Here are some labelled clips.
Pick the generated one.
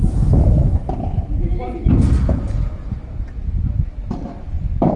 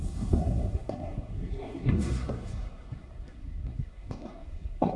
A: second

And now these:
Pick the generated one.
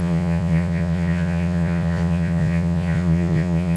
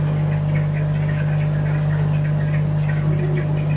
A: first